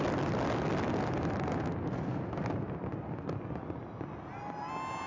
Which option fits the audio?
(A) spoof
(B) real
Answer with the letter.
B